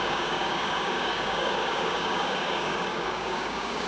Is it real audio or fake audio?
fake